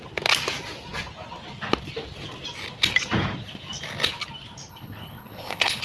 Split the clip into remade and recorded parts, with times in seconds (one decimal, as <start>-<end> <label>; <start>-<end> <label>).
0.0-4.7 recorded; 4.7-5.8 remade